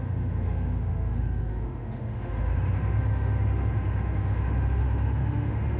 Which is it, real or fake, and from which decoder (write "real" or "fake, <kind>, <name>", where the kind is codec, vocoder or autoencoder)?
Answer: fake, autoencoder, DAC-VAE